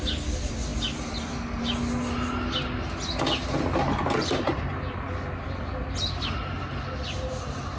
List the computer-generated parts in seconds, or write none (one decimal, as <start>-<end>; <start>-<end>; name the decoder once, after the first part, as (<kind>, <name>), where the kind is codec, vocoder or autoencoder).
none